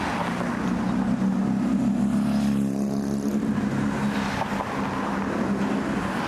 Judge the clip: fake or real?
real